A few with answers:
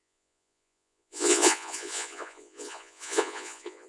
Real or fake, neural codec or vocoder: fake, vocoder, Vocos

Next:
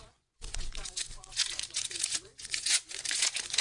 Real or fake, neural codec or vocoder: fake, vocoder, Vocos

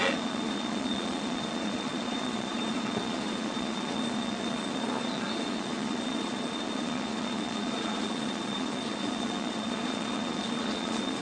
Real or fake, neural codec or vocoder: fake, vocoder, Vocos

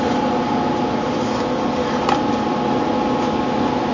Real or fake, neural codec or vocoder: real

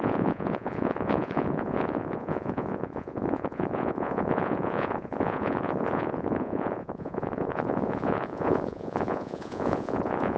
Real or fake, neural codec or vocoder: fake, vocoder, Vocos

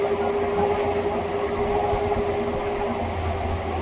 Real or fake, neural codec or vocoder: real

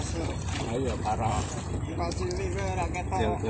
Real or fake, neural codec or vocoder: real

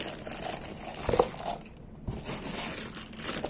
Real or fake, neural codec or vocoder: real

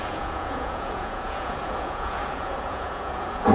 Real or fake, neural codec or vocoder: fake, vocoder, Vocos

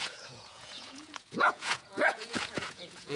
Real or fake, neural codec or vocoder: fake, vocoder, Vocos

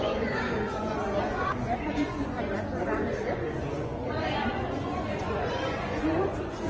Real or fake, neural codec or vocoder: fake, vocoder, Vocos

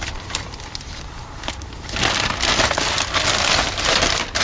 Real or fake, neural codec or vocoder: real